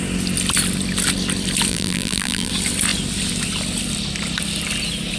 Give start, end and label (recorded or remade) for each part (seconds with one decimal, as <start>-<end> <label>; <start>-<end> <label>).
0.0-1.7 recorded; 1.7-2.5 remade; 2.5-5.2 recorded